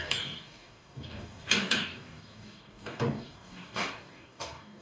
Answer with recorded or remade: remade